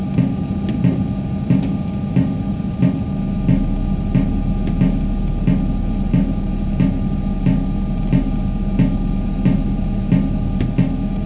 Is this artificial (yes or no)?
no